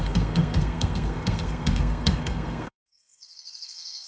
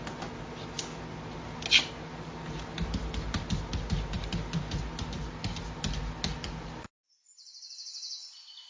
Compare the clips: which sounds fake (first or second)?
first